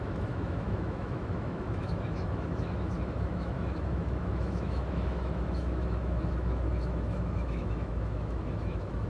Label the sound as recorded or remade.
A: remade